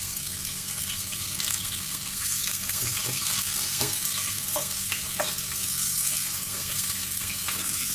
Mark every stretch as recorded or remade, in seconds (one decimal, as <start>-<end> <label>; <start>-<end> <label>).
0.0-7.9 remade